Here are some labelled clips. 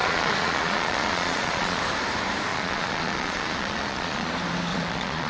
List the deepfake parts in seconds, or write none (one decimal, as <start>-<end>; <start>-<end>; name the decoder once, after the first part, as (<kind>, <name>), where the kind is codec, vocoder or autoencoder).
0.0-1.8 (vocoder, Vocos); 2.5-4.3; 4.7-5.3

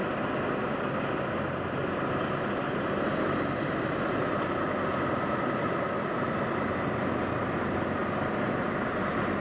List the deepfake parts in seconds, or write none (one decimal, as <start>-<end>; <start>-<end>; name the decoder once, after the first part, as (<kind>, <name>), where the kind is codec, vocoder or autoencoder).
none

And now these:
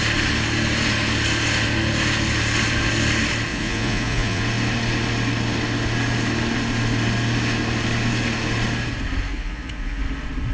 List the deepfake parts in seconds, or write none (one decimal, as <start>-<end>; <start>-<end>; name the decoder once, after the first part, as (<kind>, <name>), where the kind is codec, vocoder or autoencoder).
3.5-4.4 (vocoder, Vocos); 9.3-10.0